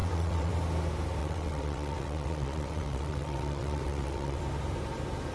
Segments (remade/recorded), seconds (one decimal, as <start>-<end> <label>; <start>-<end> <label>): 0.0-0.5 remade; 0.5-1.2 recorded; 1.2-4.4 remade; 4.4-5.3 recorded